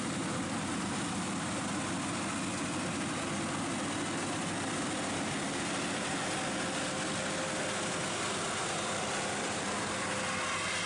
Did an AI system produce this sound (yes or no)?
no